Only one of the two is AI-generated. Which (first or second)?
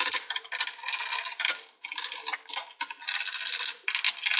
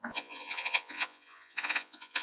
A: second